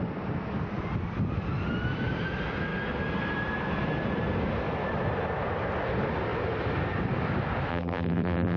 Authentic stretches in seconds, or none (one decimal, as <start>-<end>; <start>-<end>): 0.0-7.7

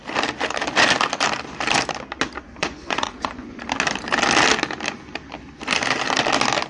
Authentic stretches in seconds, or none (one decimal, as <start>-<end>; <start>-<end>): 0.0-2.6; 3.6-6.7

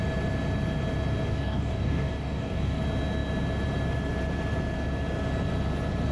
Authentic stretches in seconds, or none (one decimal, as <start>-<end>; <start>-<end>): 0.0-1.3; 2.8-6.1

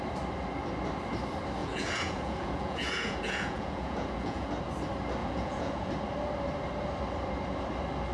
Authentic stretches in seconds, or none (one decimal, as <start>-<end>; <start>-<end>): 0.0-1.6; 4.5-5.2; 5.9-8.1

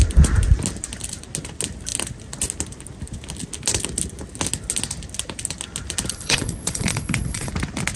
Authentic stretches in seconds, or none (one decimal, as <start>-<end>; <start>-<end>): 0.0-6.1; 7.5-8.0

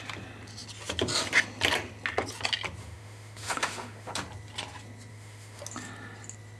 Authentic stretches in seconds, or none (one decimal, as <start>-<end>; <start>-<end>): 0.0-2.8; 4.1-5.1; 5.6-6.6

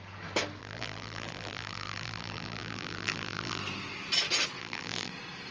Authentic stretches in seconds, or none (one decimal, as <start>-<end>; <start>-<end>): 0.0-0.6; 3.6-4.6; 5.1-5.5

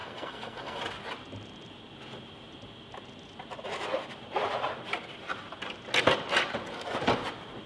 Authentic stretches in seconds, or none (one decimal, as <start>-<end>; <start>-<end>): 0.8-7.7